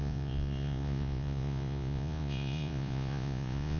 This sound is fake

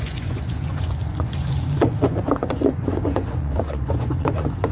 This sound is fake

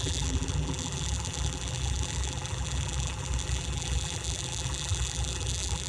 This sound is fake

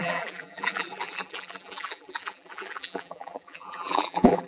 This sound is fake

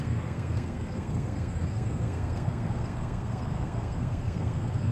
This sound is fake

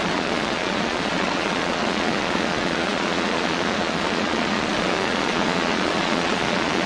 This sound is fake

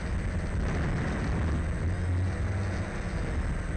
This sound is real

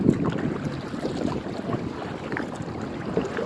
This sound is real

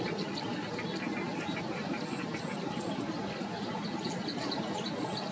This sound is real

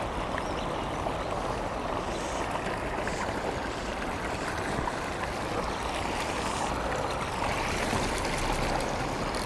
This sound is real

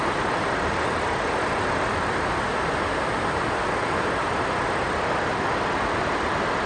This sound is real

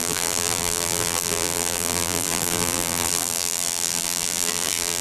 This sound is fake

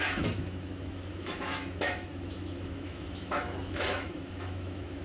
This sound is fake